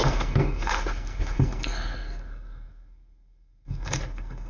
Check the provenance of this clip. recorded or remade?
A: remade